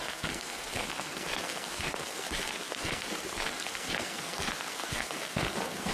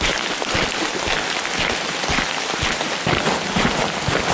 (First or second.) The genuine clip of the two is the second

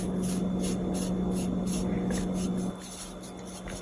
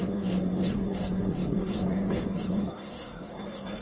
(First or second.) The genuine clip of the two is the first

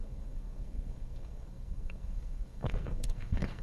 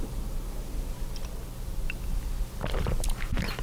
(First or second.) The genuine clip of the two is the second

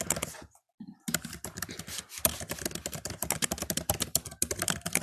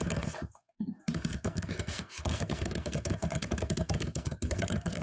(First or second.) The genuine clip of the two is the first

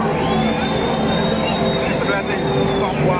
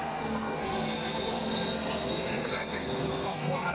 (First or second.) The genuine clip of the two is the first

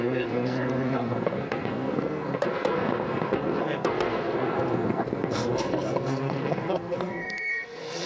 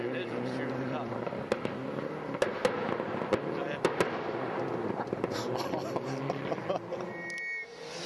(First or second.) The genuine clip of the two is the second